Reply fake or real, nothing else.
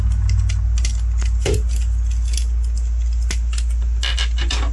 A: real